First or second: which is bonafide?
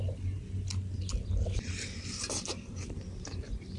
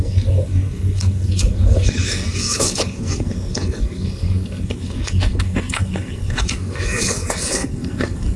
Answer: first